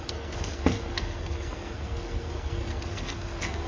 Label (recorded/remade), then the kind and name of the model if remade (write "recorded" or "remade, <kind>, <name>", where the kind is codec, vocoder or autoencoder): remade, codec, SNAC